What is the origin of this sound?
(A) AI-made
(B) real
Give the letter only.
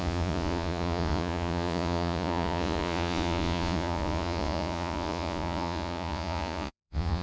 A